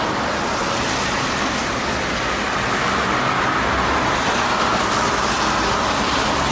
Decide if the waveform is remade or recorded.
recorded